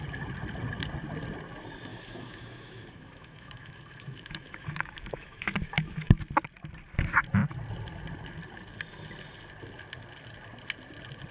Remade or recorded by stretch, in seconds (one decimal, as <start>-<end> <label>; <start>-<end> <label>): 0.0-1.9 recorded; 1.9-6.2 remade; 6.2-11.3 recorded